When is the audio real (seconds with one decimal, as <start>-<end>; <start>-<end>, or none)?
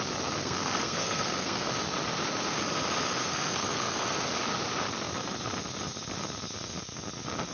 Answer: 0.0-0.4; 1.7-3.2; 4.2-7.5